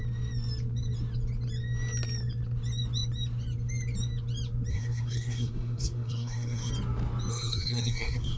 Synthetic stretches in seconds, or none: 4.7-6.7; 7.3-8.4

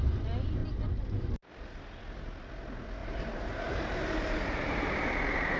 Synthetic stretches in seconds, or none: 0.6-1.3; 3.0-5.6

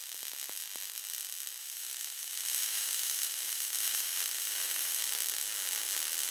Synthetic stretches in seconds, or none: 1.6-5.0

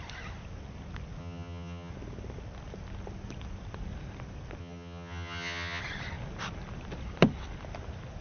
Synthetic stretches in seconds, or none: 1.2-1.9; 4.6-5.8